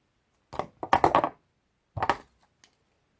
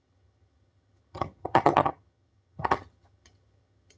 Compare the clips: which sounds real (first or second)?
first